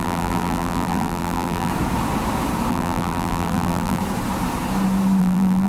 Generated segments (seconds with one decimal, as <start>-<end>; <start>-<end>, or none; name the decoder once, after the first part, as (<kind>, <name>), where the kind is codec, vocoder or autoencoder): 0.0-1.7 (vocoder, BigVGAN v2); 2.7-4.0; 5.2-5.7